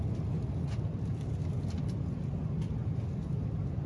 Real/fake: real